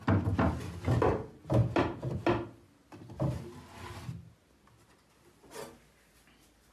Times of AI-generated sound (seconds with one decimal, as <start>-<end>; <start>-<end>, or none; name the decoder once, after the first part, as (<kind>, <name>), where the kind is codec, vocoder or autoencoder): none